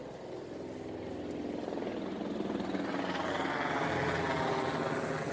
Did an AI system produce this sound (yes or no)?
no